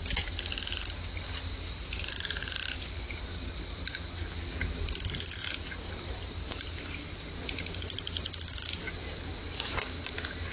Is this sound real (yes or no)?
yes